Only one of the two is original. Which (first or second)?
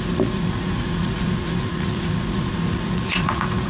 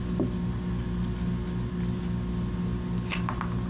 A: second